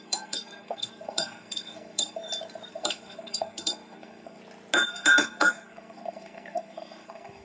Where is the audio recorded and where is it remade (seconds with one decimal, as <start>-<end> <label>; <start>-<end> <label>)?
0.0-2.2 remade; 2.2-2.7 recorded; 2.7-4.4 remade; 4.4-4.9 recorded; 4.9-7.4 remade